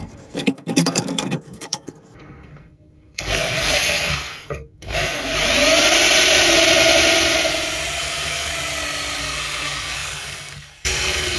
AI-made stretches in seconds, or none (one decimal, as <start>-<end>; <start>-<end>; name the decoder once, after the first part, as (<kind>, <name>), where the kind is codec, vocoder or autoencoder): 0.0-5.3 (codec, SNAC); 8.0-8.5; 9.2-11.4